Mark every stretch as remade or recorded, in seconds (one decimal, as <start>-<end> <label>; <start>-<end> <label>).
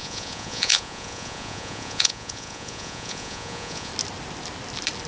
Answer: 0.0-3.9 remade; 3.9-5.1 recorded